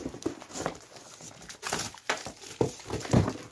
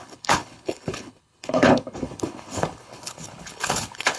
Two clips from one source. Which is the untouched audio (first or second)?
first